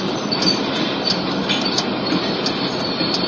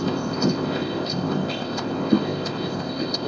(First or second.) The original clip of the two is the first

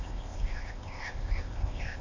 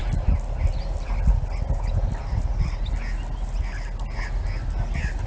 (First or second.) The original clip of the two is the second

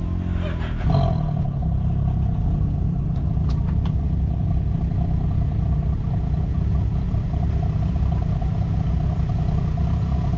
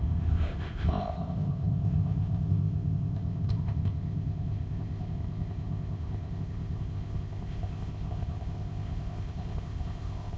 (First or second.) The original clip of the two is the first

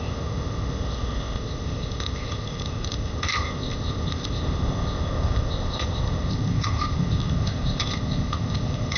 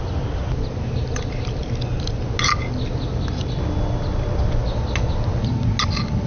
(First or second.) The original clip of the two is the second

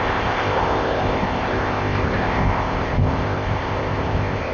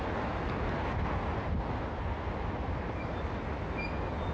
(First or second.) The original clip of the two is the second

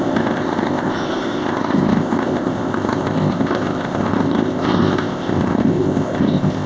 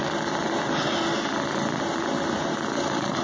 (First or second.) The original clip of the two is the second